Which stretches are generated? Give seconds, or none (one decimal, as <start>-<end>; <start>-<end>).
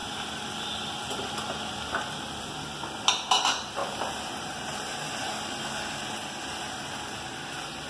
3.8-5.1